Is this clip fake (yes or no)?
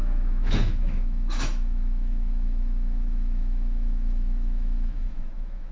yes